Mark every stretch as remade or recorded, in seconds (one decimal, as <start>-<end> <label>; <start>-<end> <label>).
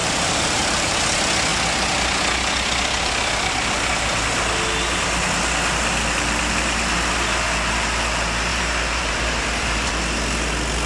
0.0-1.0 remade; 1.0-8.5 recorded; 8.5-9.9 remade; 9.9-10.9 recorded